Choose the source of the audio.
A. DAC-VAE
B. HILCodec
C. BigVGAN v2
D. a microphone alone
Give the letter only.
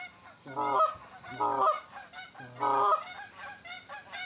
D